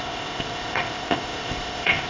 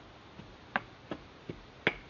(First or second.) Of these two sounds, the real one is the second